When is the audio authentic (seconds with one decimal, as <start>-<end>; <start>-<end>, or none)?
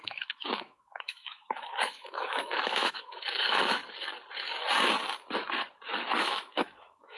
3.8-6.2